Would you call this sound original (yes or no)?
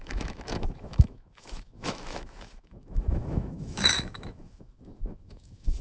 no